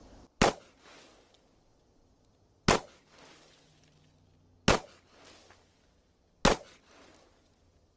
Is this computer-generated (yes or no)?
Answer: no